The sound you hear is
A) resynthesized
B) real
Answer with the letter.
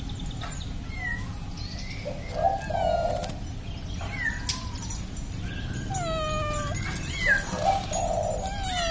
B